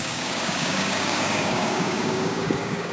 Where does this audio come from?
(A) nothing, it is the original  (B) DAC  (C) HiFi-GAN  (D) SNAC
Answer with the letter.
B